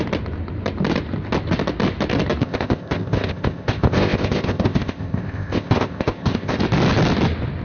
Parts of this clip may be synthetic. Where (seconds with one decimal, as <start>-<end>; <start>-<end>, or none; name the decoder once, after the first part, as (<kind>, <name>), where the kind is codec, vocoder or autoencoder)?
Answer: 2.4-6.6 (codec, ZipCodec)